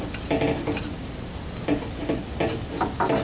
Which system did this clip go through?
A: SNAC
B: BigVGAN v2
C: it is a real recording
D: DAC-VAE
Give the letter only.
B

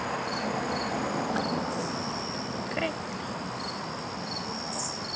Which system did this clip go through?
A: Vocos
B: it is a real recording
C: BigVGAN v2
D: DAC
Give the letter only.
B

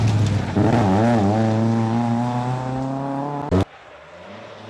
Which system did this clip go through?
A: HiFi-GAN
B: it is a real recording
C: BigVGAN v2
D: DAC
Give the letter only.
B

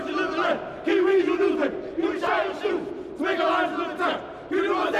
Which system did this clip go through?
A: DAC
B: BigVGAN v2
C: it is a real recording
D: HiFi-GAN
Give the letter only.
C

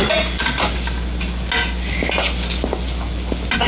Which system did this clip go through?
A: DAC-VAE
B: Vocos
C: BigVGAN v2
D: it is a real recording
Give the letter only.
D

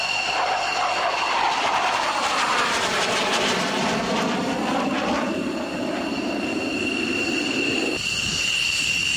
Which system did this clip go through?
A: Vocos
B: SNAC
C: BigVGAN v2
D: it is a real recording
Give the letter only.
C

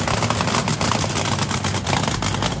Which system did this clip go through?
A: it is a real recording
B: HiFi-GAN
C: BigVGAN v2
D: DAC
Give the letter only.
A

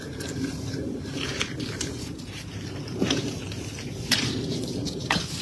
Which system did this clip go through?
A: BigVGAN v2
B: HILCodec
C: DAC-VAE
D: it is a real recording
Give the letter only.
A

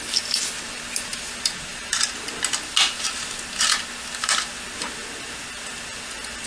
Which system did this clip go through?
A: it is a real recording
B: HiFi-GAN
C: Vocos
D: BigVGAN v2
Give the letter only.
A